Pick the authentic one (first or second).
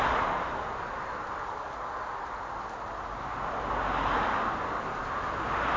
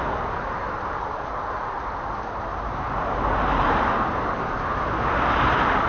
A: first